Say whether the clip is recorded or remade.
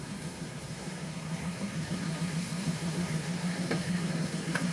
remade